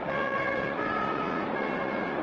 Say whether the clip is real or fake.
fake